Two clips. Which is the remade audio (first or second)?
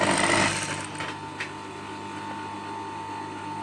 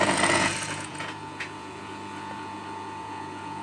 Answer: second